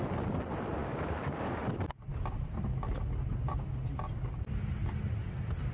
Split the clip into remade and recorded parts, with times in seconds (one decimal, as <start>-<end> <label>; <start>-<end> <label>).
0.0-0.8 recorded; 0.8-1.6 remade; 1.6-5.7 recorded